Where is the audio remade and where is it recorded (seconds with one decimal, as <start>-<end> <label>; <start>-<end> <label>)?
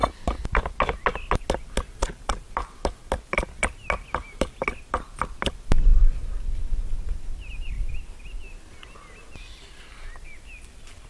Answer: 0.0-5.9 recorded; 5.9-8.5 remade; 8.5-11.1 recorded